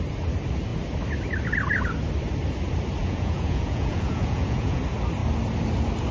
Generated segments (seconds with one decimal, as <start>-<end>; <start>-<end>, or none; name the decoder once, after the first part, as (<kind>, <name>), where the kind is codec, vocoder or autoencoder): 3.0-4.8 (vocoder, Vocos)